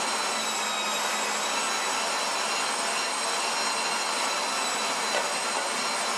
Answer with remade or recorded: recorded